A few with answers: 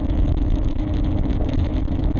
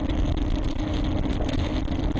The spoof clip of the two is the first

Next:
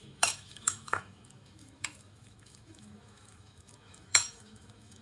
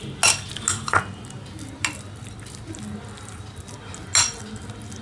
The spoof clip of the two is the first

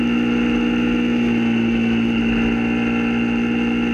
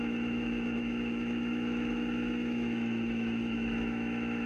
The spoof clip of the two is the second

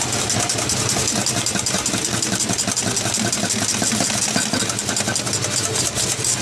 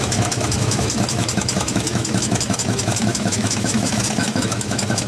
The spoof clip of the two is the second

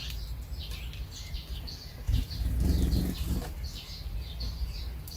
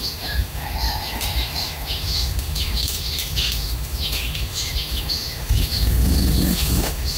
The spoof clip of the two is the second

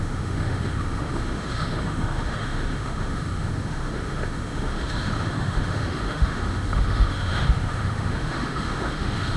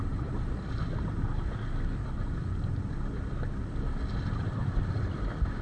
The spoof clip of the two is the first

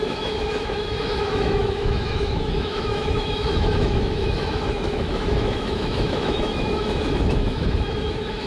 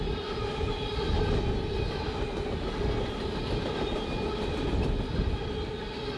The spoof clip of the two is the first